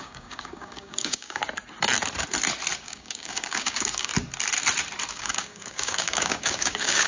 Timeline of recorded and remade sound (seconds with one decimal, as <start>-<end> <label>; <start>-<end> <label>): 0.0-1.4 remade; 1.4-2.8 recorded; 2.8-4.1 remade; 4.1-5.1 recorded; 5.1-7.1 remade